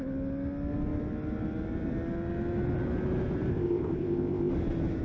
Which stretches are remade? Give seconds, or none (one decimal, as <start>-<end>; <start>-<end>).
3.5-4.5